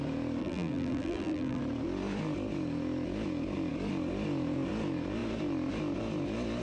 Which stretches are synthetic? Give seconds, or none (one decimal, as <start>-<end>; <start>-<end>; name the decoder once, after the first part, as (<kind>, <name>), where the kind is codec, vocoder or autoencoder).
0.4-1.6 (vocoder, BigVGAN v2)